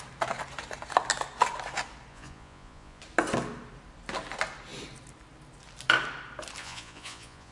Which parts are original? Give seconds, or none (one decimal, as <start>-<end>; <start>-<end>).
0.0-2.1; 3.0-6.6